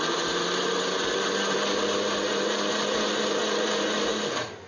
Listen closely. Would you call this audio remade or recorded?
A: recorded